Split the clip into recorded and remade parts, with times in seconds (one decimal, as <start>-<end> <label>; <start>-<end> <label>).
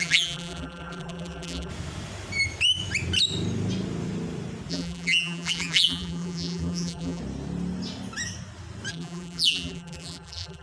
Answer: 0.0-1.7 remade; 1.7-4.7 recorded; 4.7-7.2 remade; 7.2-8.9 recorded; 8.9-10.6 remade